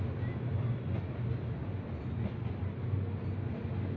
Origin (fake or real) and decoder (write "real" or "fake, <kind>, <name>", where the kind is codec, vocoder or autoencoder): real